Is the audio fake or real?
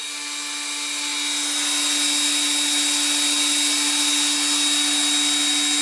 real